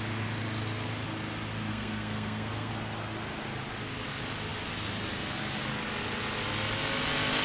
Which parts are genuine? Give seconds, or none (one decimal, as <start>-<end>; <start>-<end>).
0.0-1.7; 2.7-7.4